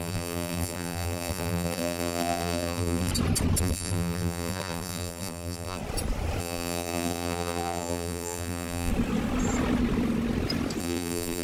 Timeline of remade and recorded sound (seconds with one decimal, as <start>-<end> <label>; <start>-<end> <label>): 0.0-3.1 remade; 3.1-3.6 recorded; 3.6-5.8 remade; 5.8-6.4 recorded; 6.4-8.9 remade; 8.9-10.8 recorded; 10.8-11.4 remade